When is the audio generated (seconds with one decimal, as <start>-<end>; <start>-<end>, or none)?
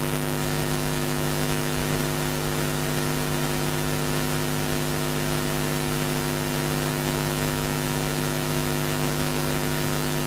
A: 0.0-1.8; 6.9-10.3